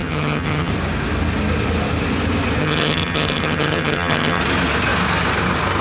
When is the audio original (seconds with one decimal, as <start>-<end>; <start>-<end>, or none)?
0.7-2.6; 4.4-5.8